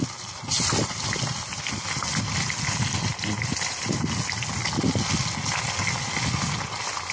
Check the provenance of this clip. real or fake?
real